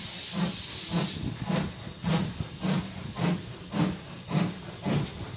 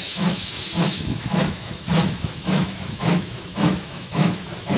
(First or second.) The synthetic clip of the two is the second